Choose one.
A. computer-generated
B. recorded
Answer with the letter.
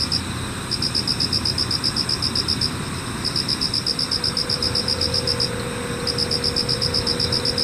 B